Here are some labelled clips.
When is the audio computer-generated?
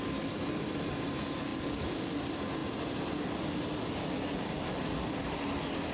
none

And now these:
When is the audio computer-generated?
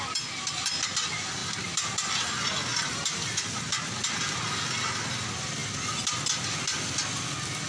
2.7-4.1 (vocoder, BigVGAN v2)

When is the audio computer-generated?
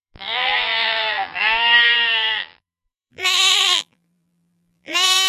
0.0-5.3 (vocoder, BigVGAN v2)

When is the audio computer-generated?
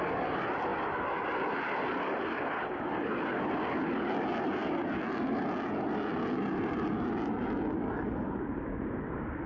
none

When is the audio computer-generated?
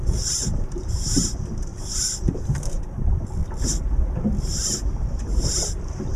0.0-3.4 (vocoder, BigVGAN v2); 4.4-6.2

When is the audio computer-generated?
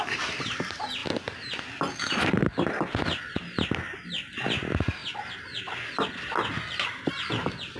0.0-1.0 (vocoder, BigVGAN v2); 2.3-5.0; 7.1-7.8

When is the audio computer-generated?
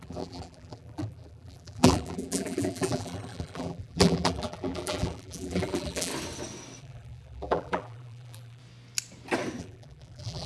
0.0-6.1 (vocoder, BigVGAN v2); 6.8-8.6; 9.6-10.5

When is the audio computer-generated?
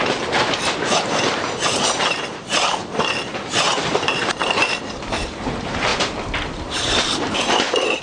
0.0-2.8 (vocoder, BigVGAN v2); 3.3-4.4; 5.1-5.9